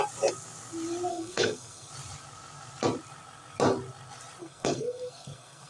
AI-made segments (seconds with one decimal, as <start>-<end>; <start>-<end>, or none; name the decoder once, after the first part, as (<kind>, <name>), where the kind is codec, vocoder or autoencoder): 1.1-1.9 (codec, SNAC); 4.4-5.7